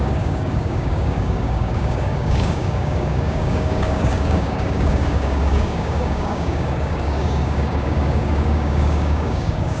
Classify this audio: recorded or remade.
remade